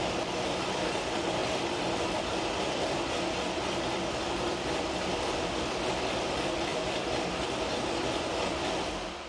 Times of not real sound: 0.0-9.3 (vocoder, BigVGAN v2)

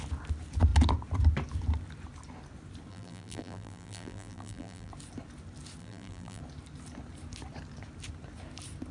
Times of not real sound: 2.9-4.9 (vocoder, BigVGAN v2); 5.8-6.4

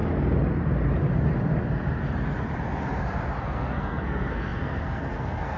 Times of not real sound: 3.4-5.6 (codec, SNAC)